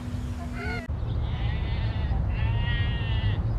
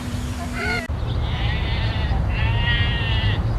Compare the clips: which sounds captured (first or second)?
first